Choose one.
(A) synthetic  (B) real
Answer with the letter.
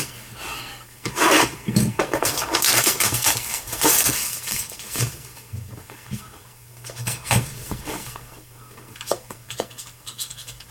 A